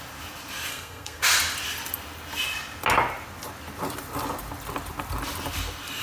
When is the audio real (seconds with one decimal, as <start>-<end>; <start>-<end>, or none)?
0.0-0.7; 1.2-6.0